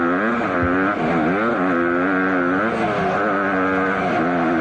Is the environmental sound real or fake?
real